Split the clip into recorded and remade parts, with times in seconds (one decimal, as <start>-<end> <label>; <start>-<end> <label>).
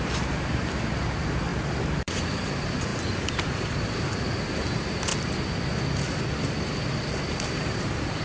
0.0-1.5 remade; 1.5-2.0 recorded; 2.0-5.1 remade; 5.1-7.5 recorded; 7.5-8.2 remade